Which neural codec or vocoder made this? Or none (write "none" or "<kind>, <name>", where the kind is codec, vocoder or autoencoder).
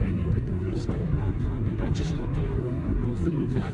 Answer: codec, SNAC